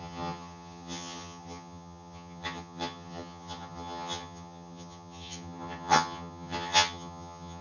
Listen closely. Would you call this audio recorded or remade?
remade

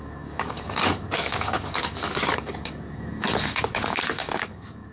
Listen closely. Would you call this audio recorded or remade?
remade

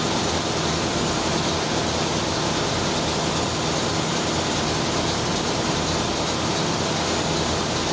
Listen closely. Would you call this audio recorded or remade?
recorded